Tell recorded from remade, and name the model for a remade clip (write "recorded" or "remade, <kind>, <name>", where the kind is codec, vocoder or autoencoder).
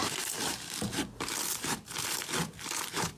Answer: remade, vocoder, BigVGAN v2